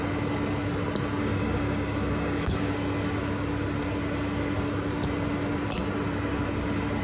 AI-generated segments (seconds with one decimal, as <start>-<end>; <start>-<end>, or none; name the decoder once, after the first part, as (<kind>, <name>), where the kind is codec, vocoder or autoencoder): 1.2-2.7 (codec, DAC)